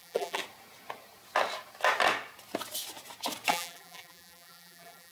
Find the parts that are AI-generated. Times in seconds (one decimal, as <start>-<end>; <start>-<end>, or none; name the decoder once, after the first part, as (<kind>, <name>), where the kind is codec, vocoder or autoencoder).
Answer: 0.0-0.4 (vocoder, BigVGAN v2); 3.5-5.1